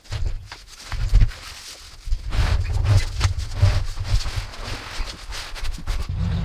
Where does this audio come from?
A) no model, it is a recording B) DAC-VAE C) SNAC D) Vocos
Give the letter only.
A